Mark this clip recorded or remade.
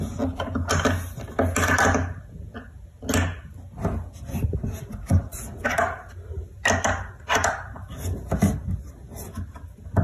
recorded